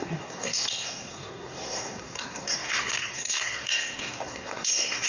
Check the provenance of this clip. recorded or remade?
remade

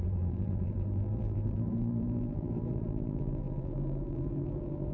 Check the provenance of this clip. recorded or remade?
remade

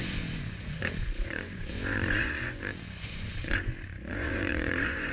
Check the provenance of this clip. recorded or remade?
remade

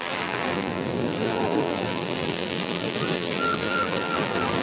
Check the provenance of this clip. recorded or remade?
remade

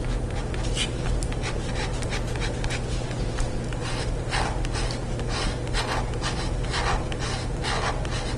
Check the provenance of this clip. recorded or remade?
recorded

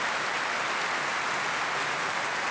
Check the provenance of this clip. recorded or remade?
recorded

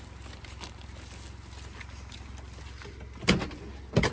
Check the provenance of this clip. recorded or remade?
recorded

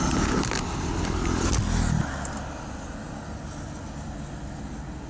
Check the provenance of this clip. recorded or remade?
recorded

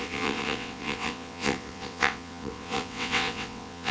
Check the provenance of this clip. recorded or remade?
remade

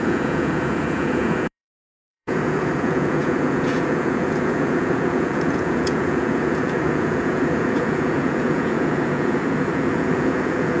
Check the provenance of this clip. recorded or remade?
remade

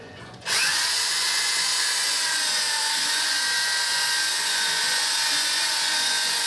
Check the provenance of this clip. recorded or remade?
remade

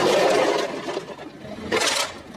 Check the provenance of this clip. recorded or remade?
recorded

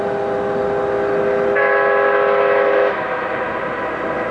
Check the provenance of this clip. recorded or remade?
recorded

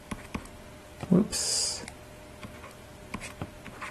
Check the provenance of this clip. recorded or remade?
recorded